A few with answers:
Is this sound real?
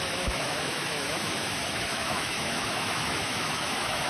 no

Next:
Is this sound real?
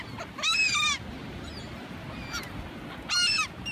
yes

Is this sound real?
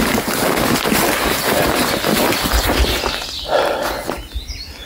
yes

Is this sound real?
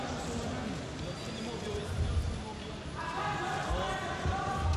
yes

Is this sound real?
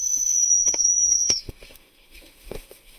no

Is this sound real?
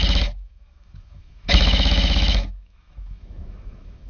no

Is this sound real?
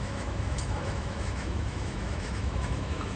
no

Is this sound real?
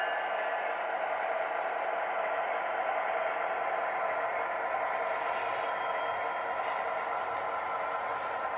yes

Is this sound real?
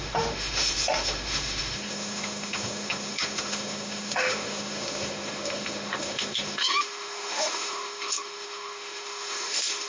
no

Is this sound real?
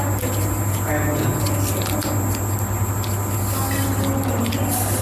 yes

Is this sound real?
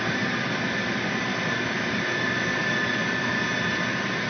yes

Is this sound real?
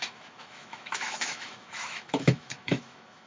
no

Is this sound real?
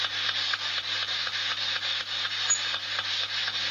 yes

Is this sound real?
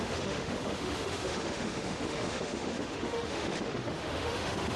no